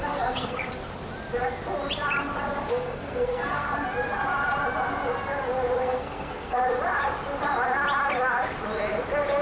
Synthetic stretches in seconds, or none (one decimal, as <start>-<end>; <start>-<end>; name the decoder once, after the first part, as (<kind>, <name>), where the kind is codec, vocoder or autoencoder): 0.0-0.6 (codec, SNAC); 2.7-3.7; 5.8-6.6

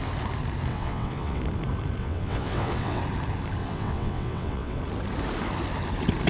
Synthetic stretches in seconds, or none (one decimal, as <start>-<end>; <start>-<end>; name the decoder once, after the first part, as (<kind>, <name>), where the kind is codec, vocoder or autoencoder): 0.7-1.4 (vocoder, WaveNeXt); 2.0-3.0; 3.6-4.8

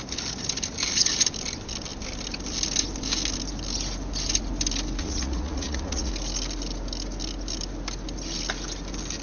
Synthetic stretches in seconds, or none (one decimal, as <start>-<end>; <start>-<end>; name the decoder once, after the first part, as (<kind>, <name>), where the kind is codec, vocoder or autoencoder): 5.0-6.1 (vocoder, Vocos)

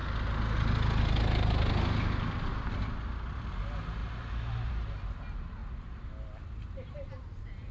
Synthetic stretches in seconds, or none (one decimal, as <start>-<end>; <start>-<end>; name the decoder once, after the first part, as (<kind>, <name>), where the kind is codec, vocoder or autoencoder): none

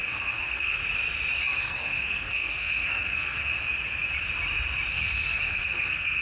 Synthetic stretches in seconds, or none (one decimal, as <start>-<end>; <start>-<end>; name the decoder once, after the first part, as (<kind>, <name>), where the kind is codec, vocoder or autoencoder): 0.0-0.8 (codec, SNAC); 1.6-3.5; 4.9-6.2

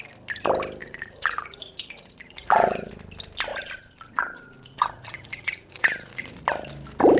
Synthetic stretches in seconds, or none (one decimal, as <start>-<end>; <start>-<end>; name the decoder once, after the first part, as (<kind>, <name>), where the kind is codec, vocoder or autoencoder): 0.8-2.9 (vocoder, Vocos); 3.5-6.4

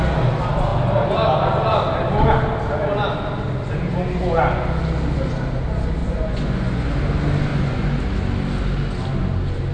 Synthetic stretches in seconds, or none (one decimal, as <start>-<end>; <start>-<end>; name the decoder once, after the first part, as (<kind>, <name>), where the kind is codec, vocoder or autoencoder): 6.0-6.9 (vocoder, Vocos); 7.5-8.0